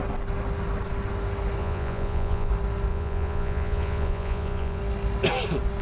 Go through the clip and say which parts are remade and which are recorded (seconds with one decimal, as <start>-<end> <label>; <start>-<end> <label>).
0.0-1.6 recorded; 1.6-2.5 remade; 2.5-2.9 recorded; 2.9-4.8 remade; 4.8-5.8 recorded